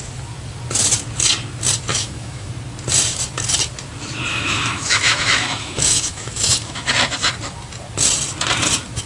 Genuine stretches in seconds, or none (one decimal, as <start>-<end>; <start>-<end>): 0.0-1.9; 2.5-4.3; 6.9-9.1